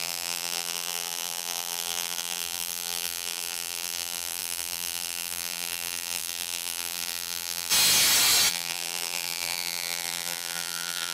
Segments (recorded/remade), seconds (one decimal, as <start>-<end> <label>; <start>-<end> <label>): 0.0-7.7 remade; 7.7-8.5 recorded; 8.5-11.1 remade